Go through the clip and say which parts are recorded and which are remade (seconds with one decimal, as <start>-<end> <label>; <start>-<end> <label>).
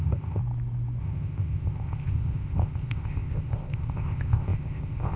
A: 0.0-0.4 remade; 0.4-1.0 recorded; 1.0-5.2 remade